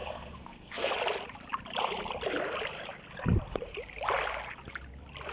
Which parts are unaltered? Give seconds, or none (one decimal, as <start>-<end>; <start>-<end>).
0.9-5.3